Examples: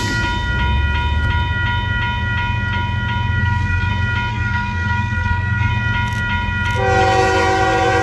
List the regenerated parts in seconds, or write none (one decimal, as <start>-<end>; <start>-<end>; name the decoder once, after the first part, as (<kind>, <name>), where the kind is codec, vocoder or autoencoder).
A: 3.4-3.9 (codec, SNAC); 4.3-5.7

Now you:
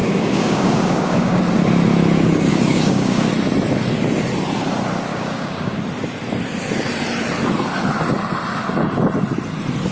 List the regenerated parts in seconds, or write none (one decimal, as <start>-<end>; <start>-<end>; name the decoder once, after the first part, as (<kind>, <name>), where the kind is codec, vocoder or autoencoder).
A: 0.0-1.4 (codec, DAC); 2.5-3.3; 5.1-5.8

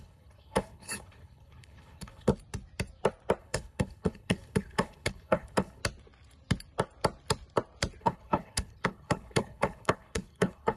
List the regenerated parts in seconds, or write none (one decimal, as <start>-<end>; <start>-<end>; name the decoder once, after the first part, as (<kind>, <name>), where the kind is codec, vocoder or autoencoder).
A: 0.0-2.3 (codec, HILCodec); 3.4-5.8; 8.0-10.8

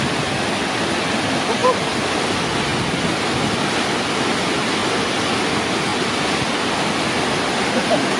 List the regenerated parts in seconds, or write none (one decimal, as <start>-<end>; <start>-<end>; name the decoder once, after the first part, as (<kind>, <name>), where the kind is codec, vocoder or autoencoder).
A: none

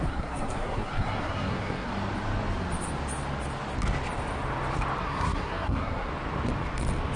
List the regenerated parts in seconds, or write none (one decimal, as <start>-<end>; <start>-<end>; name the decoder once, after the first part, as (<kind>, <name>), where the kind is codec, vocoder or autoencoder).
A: 0.0-1.9 (codec, SNAC); 5.0-6.1

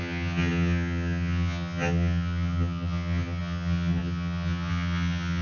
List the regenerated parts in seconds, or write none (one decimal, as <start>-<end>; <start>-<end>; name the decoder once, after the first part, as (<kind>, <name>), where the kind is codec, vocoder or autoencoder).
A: 0.0-5.4 (vocoder, HiFi-GAN)

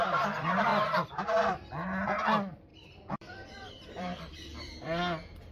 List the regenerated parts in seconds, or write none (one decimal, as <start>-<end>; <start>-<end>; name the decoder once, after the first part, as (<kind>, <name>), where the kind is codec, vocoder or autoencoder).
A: 0.7-1.5 (vocoder, BigVGAN v2); 2.7-4.7

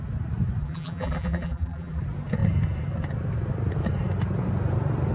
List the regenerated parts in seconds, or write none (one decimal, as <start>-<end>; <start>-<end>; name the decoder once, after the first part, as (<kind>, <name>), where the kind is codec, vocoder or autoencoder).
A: 0.6-2.0 (vocoder, BigVGAN v2)